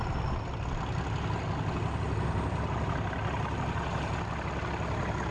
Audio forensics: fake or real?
real